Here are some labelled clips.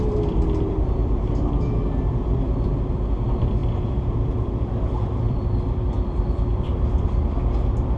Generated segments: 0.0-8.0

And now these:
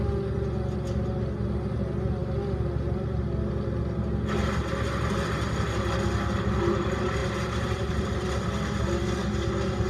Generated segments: 7.2-8.3

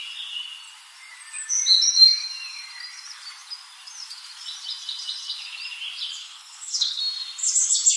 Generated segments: 6.2-7.0

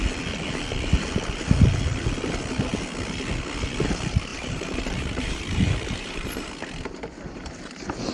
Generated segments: 4.3-6.5

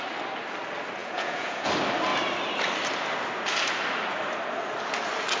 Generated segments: 1.0-1.7

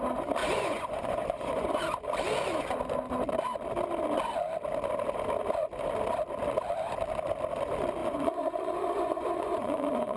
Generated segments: 0.4-1.8; 8.0-10.2

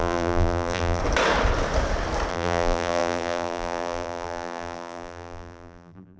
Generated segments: 0.0-1.0; 2.3-6.2